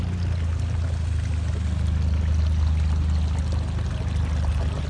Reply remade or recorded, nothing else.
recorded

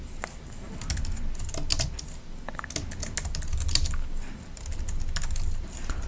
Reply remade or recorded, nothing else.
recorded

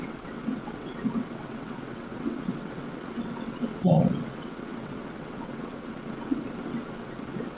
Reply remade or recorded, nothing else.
remade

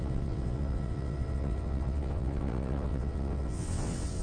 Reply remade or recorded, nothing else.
remade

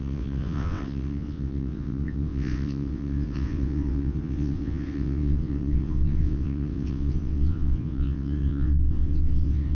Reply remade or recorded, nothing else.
remade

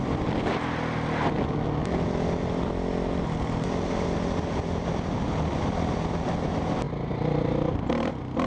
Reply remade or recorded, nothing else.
recorded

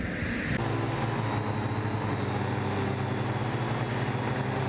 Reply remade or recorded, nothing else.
recorded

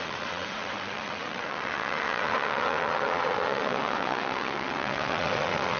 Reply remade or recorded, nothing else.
remade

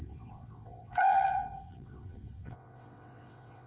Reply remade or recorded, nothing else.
remade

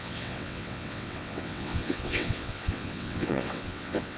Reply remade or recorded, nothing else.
remade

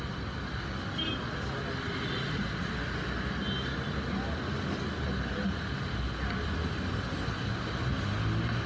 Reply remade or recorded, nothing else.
recorded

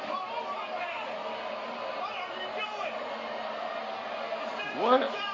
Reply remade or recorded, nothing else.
recorded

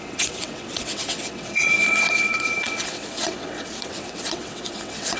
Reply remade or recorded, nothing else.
remade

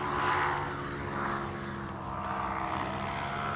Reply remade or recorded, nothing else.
recorded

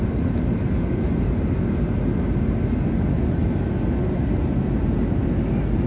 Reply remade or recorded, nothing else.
recorded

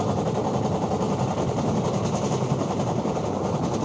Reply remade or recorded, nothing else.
recorded